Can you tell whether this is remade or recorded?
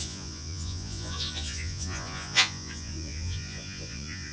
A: remade